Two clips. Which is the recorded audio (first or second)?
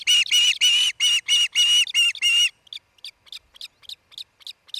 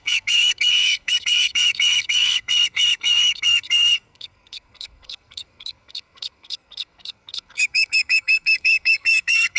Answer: first